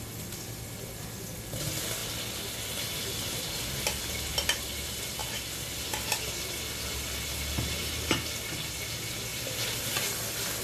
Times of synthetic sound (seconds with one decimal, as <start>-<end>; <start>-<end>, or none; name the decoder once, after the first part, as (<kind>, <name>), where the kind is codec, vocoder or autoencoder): none

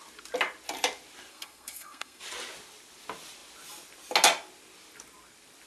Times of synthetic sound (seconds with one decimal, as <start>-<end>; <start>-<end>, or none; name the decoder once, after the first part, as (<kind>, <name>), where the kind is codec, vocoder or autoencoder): 1.3-2.2 (codec, SNAC)